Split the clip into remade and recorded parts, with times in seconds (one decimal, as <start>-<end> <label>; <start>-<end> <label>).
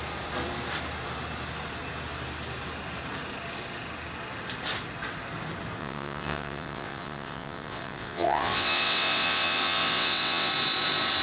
0.0-5.8 recorded; 5.8-10.5 remade; 10.5-11.2 recorded